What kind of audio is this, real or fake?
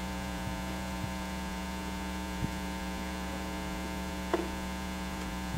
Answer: fake